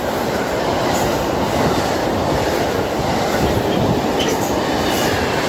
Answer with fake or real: real